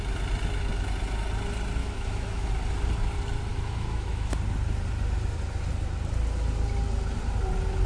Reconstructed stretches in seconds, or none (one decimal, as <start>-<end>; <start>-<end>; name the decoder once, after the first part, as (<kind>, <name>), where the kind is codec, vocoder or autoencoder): 1.8-2.5 (autoencoder, DAC-VAE); 3.5-4.3